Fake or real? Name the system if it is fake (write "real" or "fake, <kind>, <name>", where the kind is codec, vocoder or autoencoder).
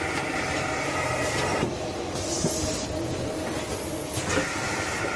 real